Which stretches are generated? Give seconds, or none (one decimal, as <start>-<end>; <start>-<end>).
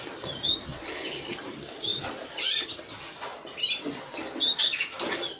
1.9-2.8